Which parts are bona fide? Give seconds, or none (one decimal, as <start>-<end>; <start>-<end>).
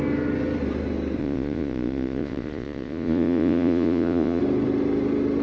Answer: 0.0-1.2; 4.4-5.4